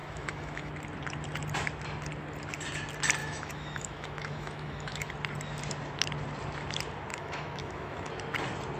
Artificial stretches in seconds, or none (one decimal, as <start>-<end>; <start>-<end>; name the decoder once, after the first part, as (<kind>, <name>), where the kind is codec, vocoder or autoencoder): 0.0-0.7 (autoencoder, DAC-VAE); 3.2-5.1; 7.1-8.1